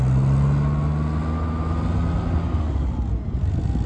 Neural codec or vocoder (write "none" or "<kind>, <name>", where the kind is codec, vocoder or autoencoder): none